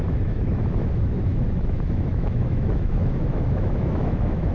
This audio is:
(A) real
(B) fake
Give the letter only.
B